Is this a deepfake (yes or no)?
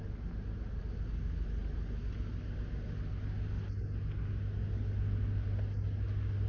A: no